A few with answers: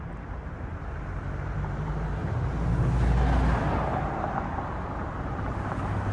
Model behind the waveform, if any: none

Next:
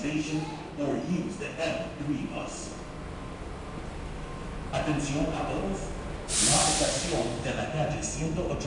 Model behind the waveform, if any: none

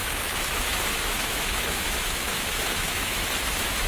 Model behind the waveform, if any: autoencoder, DAC-VAE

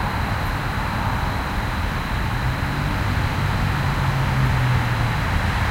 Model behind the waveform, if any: none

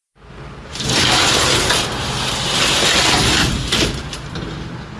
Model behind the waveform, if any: none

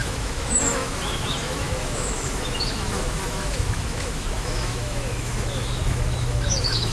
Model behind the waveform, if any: autoencoder, DAC-VAE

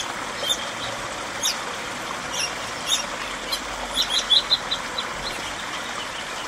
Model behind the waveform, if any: none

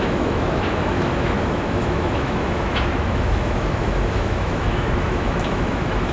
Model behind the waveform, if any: autoencoder, DAC-VAE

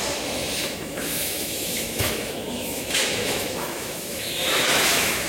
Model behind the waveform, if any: autoencoder, DAC-VAE